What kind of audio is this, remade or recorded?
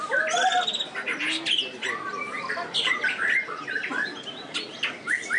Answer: recorded